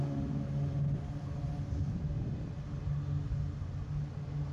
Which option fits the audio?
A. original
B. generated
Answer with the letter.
A